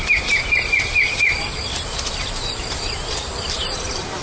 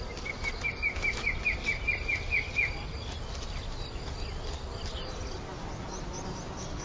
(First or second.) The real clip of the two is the second